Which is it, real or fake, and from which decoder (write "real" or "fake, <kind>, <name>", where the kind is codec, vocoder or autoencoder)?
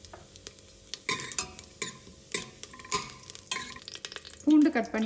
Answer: real